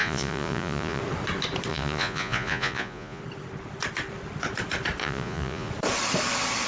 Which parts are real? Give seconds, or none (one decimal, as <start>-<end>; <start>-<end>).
1.0-1.7; 3.2-5.0; 5.7-6.7